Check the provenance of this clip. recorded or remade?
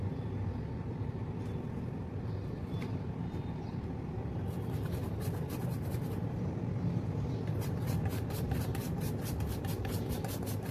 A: remade